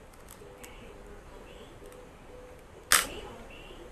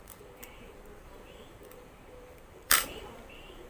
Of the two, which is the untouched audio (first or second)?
first